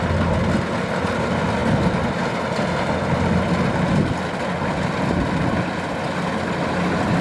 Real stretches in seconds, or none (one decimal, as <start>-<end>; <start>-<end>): 0.0-7.2